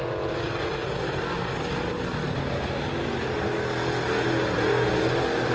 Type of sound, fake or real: real